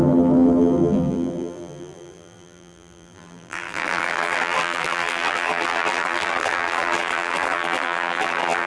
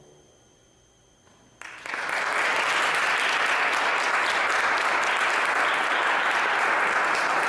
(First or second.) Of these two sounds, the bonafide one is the second